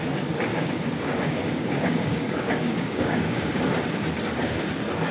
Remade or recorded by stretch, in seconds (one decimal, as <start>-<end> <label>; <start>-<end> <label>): 0.0-0.5 recorded; 0.5-3.6 remade; 3.6-5.1 recorded